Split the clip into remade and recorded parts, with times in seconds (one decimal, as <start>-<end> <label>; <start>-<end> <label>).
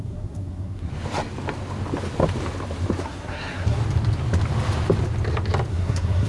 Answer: 0.0-0.9 remade; 0.9-3.0 recorded; 3.0-3.8 remade; 3.8-5.7 recorded; 5.7-6.3 remade